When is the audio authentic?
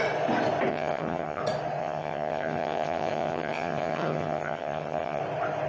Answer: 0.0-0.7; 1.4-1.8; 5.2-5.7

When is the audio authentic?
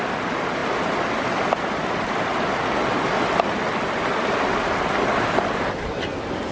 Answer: 0.0-6.5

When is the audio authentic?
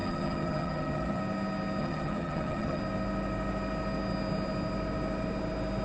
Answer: 1.2-1.8; 2.8-5.8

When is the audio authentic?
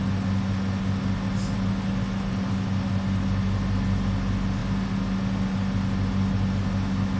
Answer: 0.0-7.2